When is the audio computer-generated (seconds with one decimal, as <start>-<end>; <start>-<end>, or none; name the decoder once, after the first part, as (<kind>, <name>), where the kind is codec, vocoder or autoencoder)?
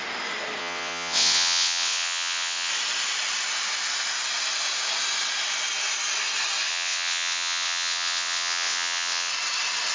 0.6-2.7 (vocoder, WaveNeXt); 6.7-9.3